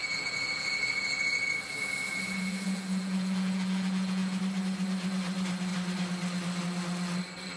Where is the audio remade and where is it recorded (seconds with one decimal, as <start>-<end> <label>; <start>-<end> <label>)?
0.0-4.4 remade; 4.4-7.6 recorded